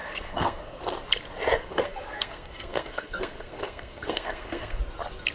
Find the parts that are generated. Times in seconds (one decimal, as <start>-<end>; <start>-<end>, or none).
0.0-0.8; 1.6-4.8